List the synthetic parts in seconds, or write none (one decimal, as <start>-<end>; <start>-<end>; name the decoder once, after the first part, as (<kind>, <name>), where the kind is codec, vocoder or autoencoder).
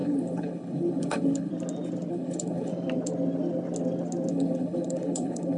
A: 0.0-1.5 (codec, HILCodec); 2.1-2.7; 4.3-5.6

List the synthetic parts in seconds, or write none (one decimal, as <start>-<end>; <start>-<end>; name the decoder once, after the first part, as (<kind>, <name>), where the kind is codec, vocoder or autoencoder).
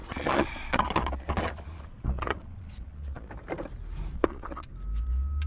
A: 0.0-3.3 (vocoder, Vocos); 4.1-4.7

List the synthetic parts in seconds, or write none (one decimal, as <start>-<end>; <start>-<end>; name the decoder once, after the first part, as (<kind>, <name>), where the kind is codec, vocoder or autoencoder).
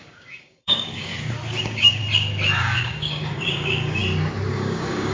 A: 0.0-1.1 (codec, DAC); 1.6-2.0; 2.6-4.0; 4.5-5.1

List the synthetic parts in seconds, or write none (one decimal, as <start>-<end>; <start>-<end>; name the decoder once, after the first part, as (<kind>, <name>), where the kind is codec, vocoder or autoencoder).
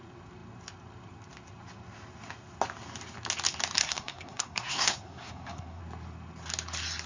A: 3.8-5.8 (codec, SNAC)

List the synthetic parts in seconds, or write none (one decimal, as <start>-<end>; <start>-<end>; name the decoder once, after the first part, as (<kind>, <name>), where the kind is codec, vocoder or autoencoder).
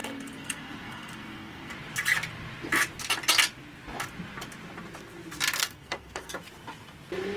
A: 0.0-1.7 (codec, SNAC); 5.6-6.3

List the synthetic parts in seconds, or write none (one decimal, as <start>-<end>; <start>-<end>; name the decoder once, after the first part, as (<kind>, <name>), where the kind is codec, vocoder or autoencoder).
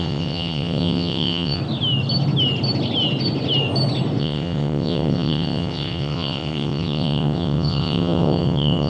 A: 0.0-1.6 (vocoder, WaveNeXt); 4.2-8.9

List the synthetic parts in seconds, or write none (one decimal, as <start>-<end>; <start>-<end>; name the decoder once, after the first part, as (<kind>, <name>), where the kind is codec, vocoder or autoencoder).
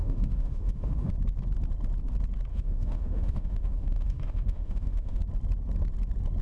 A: 0.0-1.1 (autoencoder, DAC-VAE); 2.5-5.2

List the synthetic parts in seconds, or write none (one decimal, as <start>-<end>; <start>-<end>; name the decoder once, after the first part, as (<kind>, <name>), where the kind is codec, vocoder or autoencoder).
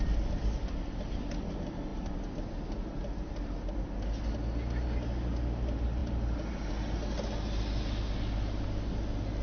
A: none